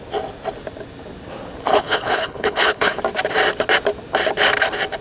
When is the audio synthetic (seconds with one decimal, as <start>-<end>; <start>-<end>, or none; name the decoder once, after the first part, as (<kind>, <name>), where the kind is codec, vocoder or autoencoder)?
1.7-3.0 (codec, HILCodec)